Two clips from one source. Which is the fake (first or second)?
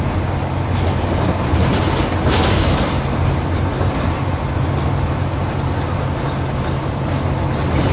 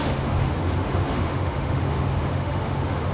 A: second